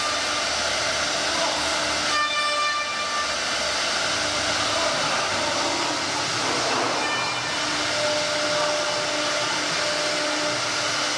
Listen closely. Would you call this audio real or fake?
real